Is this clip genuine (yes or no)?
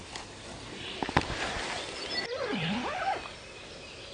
yes